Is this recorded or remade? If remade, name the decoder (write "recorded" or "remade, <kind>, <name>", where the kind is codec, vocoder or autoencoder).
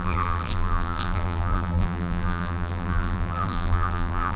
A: remade, vocoder, BigVGAN v2